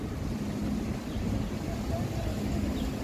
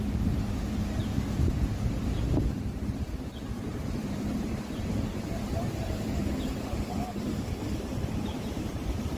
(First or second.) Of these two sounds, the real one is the first